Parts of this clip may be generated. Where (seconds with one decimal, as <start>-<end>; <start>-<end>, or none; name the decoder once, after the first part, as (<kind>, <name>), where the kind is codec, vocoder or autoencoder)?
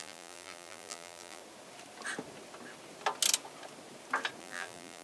0.0-1.4 (vocoder, BigVGAN v2); 4.4-5.0